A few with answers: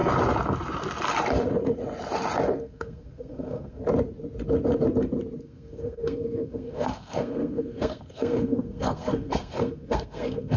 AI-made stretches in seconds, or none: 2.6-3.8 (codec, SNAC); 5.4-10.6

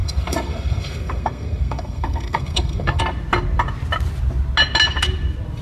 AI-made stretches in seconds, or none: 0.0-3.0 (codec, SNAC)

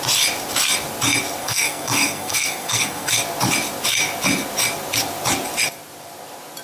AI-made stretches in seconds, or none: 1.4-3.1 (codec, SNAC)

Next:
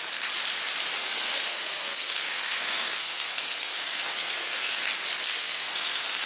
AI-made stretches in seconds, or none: 1.0-4.8 (codec, SNAC); 5.3-6.3

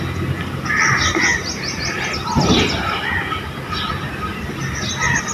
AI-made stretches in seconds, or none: none